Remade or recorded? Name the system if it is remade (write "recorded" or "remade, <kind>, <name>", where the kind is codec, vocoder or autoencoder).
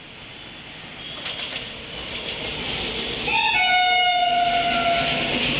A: recorded